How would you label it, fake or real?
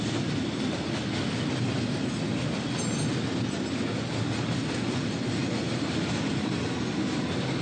real